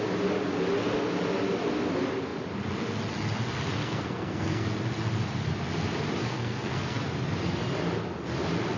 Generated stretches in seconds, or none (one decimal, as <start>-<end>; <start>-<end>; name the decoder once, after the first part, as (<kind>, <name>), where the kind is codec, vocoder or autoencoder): 3.8-4.7 (codec, SNAC); 6.2-7.0